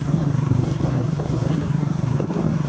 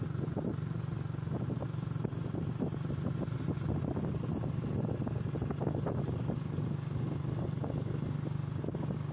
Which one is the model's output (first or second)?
first